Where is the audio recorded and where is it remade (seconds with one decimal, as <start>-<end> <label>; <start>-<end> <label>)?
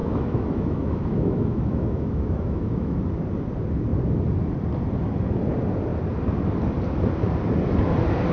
0.0-3.0 remade; 3.0-8.3 recorded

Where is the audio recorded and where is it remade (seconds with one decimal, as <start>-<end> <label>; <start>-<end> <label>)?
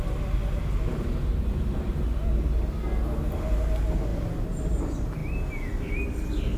0.0-6.6 recorded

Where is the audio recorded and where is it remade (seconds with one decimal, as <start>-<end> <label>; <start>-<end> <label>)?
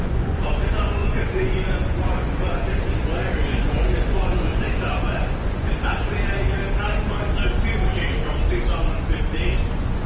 0.0-6.6 remade; 6.6-8.5 recorded; 8.5-10.1 remade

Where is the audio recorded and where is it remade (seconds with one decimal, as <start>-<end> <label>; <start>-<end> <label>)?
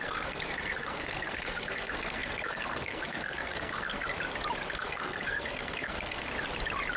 0.0-4.1 remade; 4.1-4.7 recorded; 4.7-6.3 remade; 6.3-7.0 recorded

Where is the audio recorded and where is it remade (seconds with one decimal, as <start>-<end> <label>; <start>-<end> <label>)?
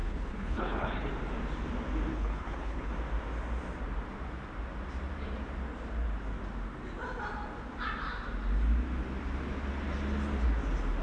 0.0-1.1 remade; 1.1-2.1 recorded; 2.1-2.9 remade; 2.9-11.0 recorded